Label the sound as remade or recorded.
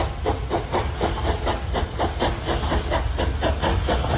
recorded